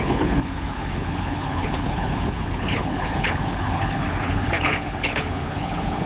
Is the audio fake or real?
fake